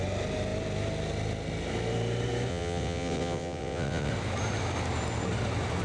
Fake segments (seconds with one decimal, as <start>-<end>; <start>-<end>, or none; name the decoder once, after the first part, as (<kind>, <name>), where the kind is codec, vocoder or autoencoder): 2.5-4.1 (vocoder, WaveNeXt)